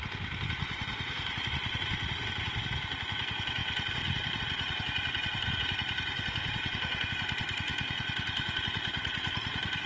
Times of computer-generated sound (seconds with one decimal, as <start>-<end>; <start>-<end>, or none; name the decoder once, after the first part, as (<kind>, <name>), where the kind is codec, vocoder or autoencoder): none